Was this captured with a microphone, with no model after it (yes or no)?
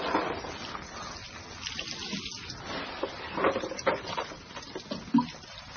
yes